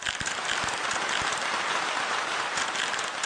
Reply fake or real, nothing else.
real